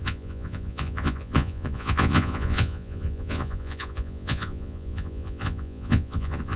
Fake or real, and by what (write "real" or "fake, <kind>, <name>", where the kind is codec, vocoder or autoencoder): fake, vocoder, Vocos